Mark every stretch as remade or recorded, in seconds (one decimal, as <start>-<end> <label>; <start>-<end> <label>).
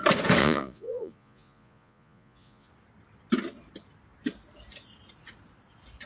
0.0-0.4 recorded; 0.4-2.7 remade; 2.7-6.1 recorded